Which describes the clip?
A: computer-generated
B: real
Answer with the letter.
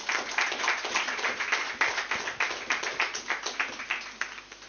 B